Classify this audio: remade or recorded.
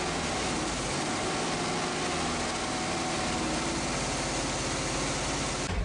recorded